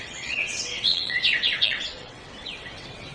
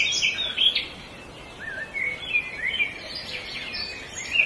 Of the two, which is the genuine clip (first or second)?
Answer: second